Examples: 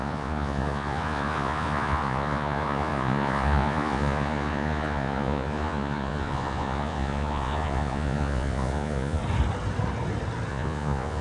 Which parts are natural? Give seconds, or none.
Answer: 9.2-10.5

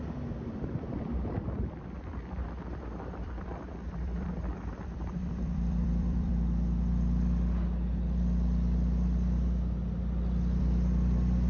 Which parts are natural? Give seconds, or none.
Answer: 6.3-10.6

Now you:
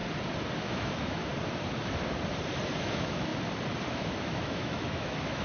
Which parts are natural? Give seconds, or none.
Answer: 0.0-0.6; 1.3-2.7; 3.3-3.9